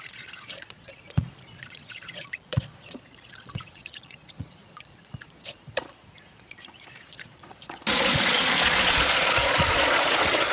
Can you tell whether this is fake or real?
fake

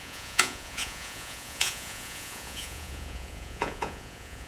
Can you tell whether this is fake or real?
fake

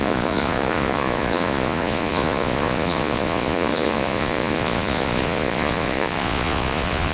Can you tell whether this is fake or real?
fake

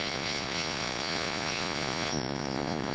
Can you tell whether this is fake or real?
fake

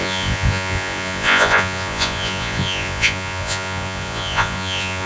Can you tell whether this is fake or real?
fake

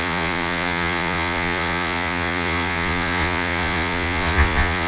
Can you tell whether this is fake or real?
fake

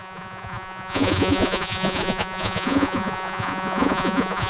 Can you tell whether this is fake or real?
fake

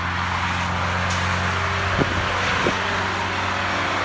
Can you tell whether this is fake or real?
real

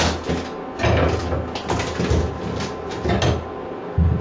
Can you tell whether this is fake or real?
real